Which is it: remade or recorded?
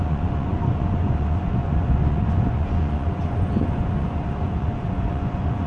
remade